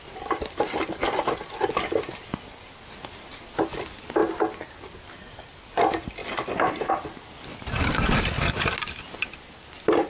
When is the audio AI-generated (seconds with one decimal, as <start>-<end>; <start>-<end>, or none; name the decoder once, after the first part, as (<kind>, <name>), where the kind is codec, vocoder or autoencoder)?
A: none

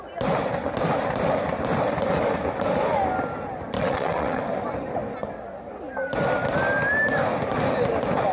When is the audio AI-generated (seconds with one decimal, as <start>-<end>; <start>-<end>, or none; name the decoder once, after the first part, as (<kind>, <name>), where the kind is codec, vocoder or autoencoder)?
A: 3.8-4.4 (vocoder, WaveNeXt)

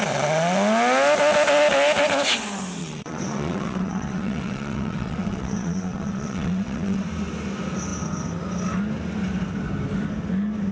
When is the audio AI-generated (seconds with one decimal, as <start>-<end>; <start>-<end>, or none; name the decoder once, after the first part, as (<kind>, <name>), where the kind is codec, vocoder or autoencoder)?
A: 2.8-7.0 (vocoder, WaveNeXt)

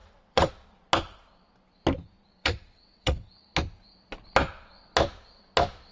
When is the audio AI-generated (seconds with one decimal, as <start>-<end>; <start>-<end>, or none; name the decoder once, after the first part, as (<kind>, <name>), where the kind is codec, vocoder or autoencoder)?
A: 0.0-0.5 (vocoder, WaveNeXt); 2.4-3.3

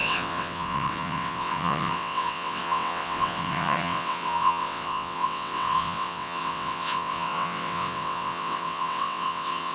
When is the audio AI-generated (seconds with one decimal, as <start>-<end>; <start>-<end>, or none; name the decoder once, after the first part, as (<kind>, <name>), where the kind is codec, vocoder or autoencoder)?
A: 0.0-9.7 (vocoder, WaveNeXt)

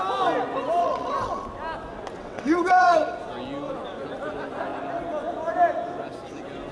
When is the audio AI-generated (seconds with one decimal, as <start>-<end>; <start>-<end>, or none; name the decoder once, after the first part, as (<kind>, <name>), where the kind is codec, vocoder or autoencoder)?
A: 0.8-1.4 (vocoder, WaveNeXt); 2.2-3.2

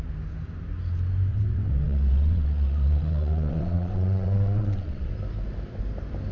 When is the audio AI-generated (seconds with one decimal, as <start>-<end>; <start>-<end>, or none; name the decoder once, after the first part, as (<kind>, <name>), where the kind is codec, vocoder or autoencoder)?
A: 1.3-5.1 (vocoder, WaveNeXt)

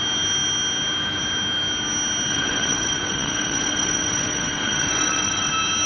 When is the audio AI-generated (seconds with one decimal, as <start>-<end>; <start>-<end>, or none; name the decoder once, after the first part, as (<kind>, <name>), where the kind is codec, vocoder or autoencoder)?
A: 2.3-5.5 (vocoder, WaveNeXt)